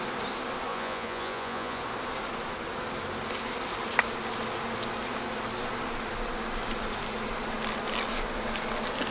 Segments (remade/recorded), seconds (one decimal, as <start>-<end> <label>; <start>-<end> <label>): 0.0-0.7 recorded; 0.7-1.8 remade; 1.8-9.1 recorded